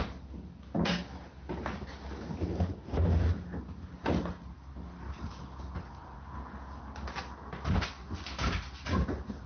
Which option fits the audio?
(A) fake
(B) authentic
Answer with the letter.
B